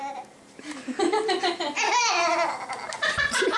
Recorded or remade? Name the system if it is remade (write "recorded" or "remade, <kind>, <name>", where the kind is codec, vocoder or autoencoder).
recorded